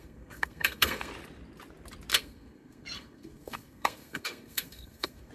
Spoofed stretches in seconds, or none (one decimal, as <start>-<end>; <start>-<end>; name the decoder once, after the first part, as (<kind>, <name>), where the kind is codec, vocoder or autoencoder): 0.0-1.1 (codec, SNAC); 2.1-5.3